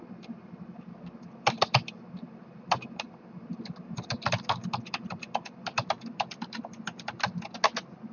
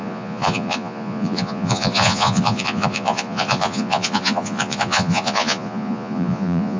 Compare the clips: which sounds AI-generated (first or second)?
second